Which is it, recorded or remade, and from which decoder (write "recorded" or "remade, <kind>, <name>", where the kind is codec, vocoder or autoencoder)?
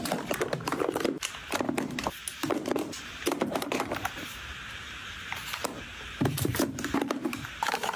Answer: remade, vocoder, BigVGAN v2